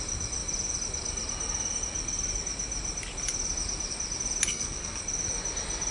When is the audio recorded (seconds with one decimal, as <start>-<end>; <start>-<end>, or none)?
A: 0.0-4.5; 5.0-5.9